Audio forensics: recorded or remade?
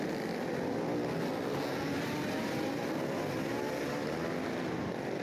recorded